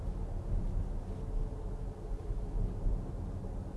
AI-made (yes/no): no